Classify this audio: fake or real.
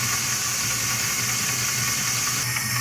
real